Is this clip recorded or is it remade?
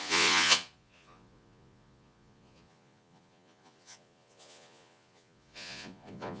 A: remade